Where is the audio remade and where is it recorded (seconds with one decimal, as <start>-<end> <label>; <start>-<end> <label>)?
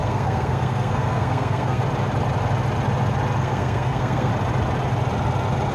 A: 0.0-1.8 remade; 1.8-3.4 recorded; 3.4-4.3 remade; 4.3-5.7 recorded